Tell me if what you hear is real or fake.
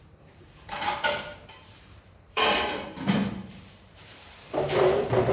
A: fake